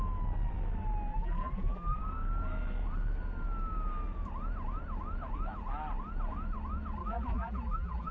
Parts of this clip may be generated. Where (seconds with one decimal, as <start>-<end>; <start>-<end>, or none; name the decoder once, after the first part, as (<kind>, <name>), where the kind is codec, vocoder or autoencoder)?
1.1-2.0 (vocoder, BigVGAN v2); 7.0-8.1